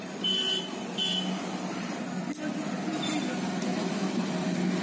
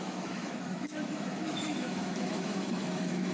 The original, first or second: first